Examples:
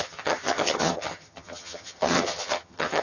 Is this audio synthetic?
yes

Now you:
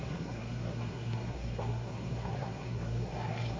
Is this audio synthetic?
yes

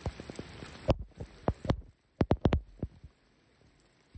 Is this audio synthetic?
no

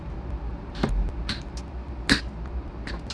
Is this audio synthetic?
no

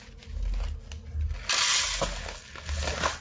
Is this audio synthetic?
no